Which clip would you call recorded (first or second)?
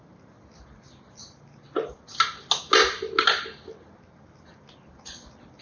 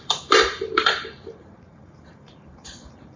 first